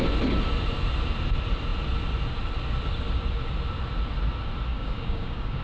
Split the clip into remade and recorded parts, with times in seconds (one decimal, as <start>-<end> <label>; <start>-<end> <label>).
0.0-4.7 recorded; 4.7-5.6 remade